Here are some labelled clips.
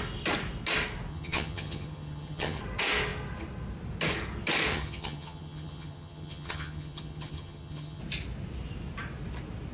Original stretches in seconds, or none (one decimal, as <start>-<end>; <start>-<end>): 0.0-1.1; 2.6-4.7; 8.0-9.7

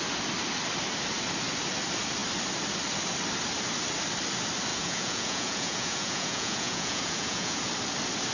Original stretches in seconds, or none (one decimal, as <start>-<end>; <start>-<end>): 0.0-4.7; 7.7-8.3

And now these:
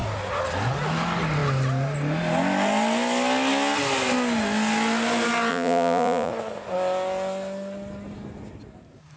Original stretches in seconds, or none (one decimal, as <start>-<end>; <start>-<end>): 0.0-5.5; 6.3-9.2